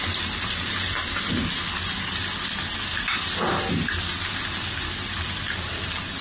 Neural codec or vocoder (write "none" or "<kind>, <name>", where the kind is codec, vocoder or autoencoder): none